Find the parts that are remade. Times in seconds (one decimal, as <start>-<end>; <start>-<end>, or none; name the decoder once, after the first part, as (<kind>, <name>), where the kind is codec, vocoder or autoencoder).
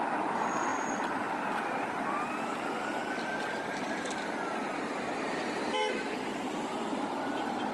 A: none